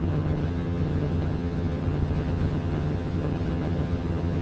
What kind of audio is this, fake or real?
fake